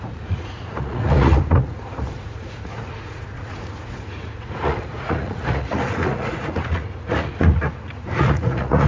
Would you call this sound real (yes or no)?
no